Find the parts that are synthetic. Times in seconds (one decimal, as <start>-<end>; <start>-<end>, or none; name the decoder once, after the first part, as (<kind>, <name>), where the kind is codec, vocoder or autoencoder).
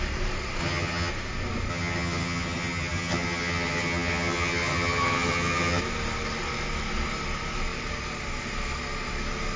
0.6-1.1 (vocoder, HiFi-GAN); 1.7-5.8